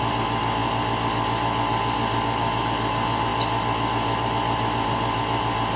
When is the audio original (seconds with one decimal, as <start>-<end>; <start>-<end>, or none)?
0.0-5.8

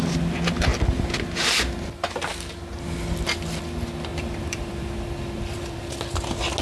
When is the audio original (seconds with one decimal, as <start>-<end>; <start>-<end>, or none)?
0.0-4.1; 5.8-6.6